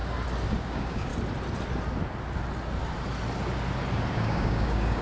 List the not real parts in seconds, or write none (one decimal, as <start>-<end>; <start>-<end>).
0.6-1.1; 4.1-5.0